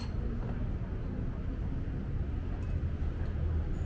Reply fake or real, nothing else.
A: real